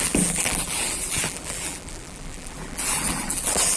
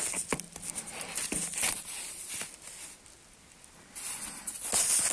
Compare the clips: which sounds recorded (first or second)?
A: second